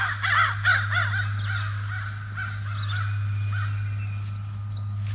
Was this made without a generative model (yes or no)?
yes